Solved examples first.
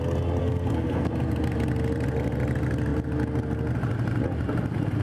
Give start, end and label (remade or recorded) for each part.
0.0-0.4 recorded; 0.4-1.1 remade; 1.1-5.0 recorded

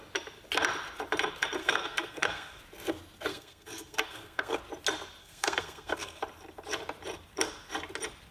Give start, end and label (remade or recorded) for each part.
0.0-1.6 recorded; 1.6-2.6 remade; 2.6-3.3 recorded; 3.3-4.6 remade; 4.6-5.2 recorded; 5.2-6.2 remade; 6.2-8.3 recorded

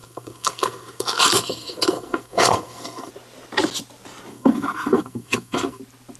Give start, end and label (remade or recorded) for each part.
0.0-3.1 remade; 3.1-4.3 recorded; 4.3-5.8 remade; 5.8-6.2 recorded

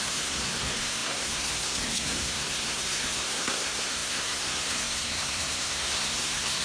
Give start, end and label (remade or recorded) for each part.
0.0-6.6 remade